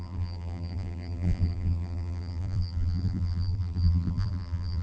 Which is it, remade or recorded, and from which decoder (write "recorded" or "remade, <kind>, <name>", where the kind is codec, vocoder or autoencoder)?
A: remade, vocoder, BigVGAN v2